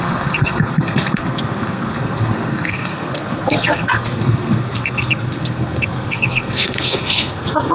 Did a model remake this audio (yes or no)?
yes